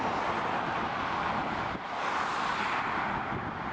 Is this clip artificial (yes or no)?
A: no